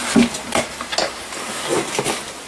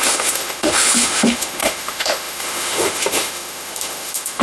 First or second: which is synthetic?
second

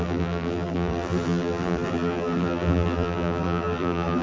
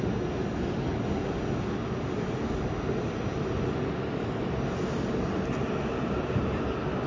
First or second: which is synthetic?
first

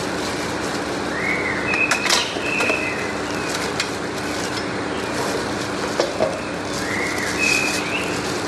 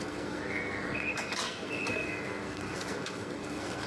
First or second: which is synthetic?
second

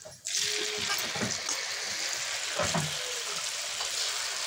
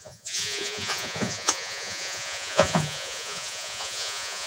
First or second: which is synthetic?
second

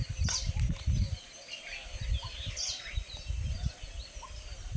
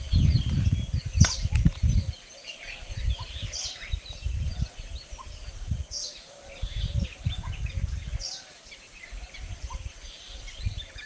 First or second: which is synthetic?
second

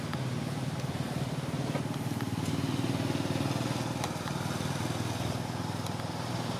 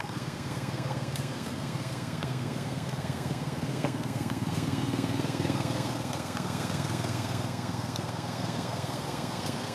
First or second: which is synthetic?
second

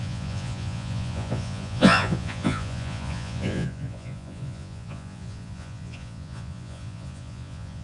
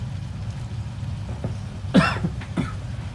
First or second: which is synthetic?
first